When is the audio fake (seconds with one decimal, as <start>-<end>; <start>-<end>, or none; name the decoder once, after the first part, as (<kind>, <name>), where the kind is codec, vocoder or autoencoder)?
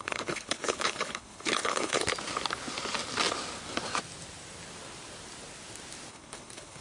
0.0-2.0 (codec, HILCodec); 6.1-6.8